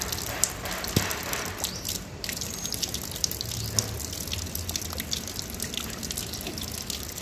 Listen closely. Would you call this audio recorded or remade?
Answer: recorded